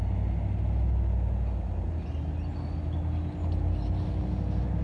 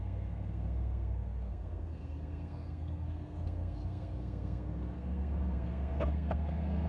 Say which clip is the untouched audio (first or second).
first